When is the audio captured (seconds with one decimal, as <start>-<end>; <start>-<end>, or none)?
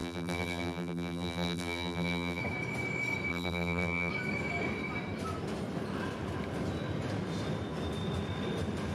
2.4-3.3; 4.1-8.9